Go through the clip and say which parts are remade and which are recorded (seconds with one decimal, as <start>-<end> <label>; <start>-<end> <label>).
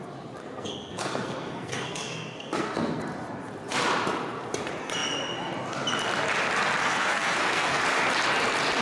0.0-0.4 recorded; 0.4-3.0 remade; 3.0-6.8 recorded; 6.8-7.8 remade; 7.8-8.8 recorded